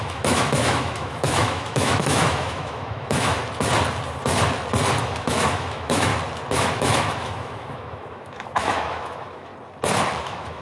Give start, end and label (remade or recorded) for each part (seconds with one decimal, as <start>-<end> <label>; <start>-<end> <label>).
0.0-3.4 remade; 3.4-5.0 recorded; 5.0-6.1 remade; 6.1-6.6 recorded; 6.6-9.5 remade; 9.5-10.2 recorded; 10.2-10.6 remade